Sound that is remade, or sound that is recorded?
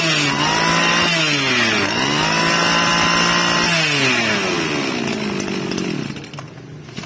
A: recorded